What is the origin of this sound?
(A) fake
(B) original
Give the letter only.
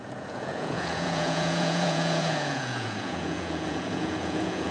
A